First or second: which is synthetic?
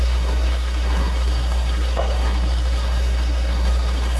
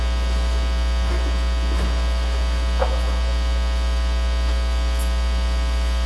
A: first